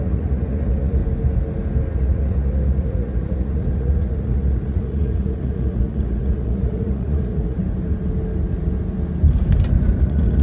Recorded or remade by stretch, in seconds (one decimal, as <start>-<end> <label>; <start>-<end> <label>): 0.0-1.0 remade; 1.0-1.9 recorded; 1.9-7.6 remade; 7.6-10.0 recorded; 10.0-10.4 remade